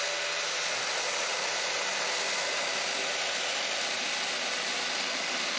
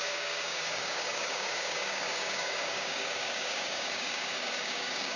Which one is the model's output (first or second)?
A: second